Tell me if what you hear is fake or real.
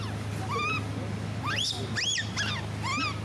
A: real